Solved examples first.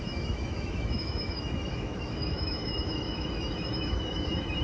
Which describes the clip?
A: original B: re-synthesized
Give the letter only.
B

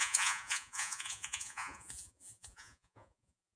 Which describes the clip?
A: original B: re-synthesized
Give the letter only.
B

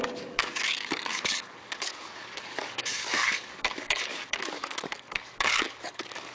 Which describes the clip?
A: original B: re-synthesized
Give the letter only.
B